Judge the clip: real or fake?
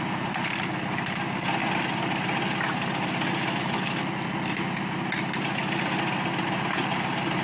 real